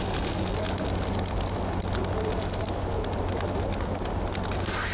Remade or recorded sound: recorded